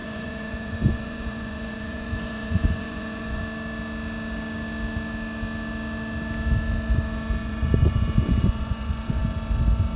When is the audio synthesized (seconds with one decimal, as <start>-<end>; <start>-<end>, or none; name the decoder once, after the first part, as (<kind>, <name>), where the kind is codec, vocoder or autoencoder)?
0.0-3.4 (vocoder, Vocos); 7.4-9.2